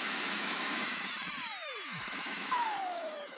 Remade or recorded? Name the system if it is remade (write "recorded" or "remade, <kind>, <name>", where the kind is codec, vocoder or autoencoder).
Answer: remade, autoencoder, DAC-VAE